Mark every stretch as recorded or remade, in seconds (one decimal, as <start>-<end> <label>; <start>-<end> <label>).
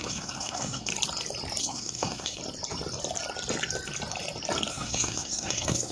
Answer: 0.0-0.9 remade; 0.9-1.6 recorded; 1.6-2.4 remade; 2.4-4.7 recorded; 4.7-5.9 remade